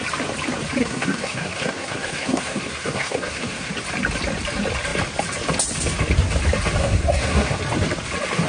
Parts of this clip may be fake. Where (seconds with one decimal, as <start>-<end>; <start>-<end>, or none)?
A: 0.8-3.7; 6.8-7.6